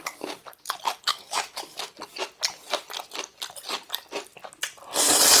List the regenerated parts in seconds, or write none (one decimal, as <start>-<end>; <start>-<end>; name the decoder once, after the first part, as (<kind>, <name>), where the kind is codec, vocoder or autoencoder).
1.1-1.9 (autoencoder, DAC-VAE)